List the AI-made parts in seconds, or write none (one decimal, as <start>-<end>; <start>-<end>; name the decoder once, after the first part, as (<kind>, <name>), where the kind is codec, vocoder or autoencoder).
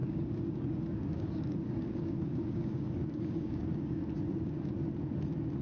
0.0-4.0 (codec, DAC)